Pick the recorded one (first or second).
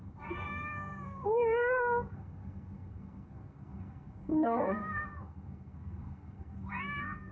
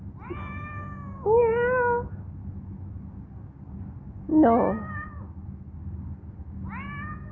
second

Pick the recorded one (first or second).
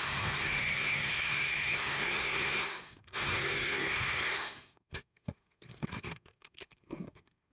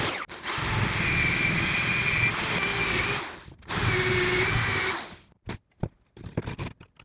second